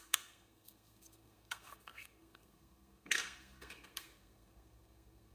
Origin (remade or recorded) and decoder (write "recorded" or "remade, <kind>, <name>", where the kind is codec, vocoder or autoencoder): remade, codec, SNAC